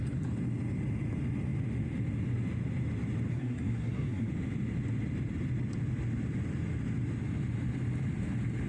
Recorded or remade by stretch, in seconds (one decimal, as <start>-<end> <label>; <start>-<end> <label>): 0.0-3.3 recorded; 3.3-4.3 remade; 4.3-8.7 recorded